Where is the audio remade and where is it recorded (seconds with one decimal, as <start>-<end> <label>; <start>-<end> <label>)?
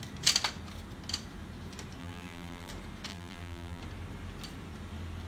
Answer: 0.0-2.0 recorded; 2.0-2.7 remade; 2.7-3.1 recorded; 3.1-3.8 remade; 3.8-5.3 recorded